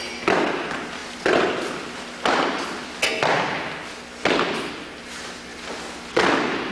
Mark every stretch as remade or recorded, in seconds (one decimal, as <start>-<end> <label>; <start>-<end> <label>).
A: 0.0-6.7 recorded